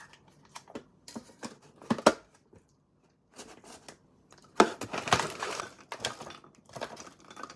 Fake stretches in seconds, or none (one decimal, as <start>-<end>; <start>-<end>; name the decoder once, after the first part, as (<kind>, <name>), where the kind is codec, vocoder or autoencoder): none